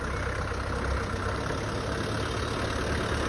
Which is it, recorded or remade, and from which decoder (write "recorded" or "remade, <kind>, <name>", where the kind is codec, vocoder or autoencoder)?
recorded